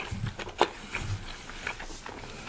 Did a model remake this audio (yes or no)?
no